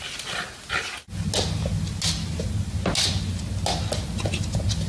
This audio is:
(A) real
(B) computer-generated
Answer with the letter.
A